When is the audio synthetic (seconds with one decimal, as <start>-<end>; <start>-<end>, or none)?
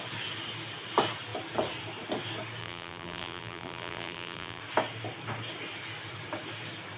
2.6-4.6